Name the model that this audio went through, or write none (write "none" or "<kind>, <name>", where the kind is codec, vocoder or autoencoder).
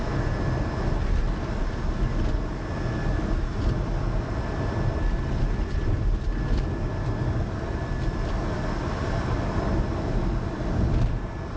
none